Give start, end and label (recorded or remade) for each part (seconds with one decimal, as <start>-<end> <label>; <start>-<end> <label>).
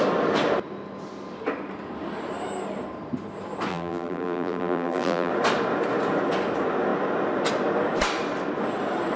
0.0-3.7 recorded; 3.7-5.3 remade; 5.3-9.2 recorded